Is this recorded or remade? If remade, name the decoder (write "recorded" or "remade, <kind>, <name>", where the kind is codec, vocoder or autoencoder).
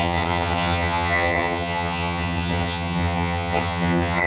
remade, vocoder, HiFi-GAN